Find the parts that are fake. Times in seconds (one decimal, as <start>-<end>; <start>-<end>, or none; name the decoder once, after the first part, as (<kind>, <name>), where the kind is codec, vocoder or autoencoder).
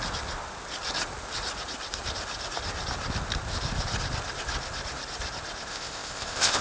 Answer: 5.7-6.6 (codec, ZipCodec)